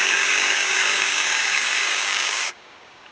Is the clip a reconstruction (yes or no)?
yes